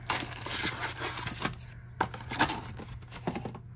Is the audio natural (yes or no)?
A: yes